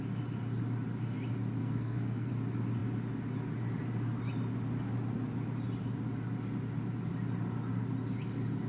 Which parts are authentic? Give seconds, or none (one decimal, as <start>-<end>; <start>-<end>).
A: 0.0-1.6; 2.3-8.7